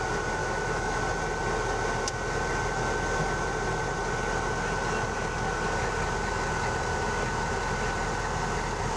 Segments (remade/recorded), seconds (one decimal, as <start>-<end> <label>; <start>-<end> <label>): 0.0-0.4 recorded; 0.4-1.0 remade; 1.0-9.0 recorded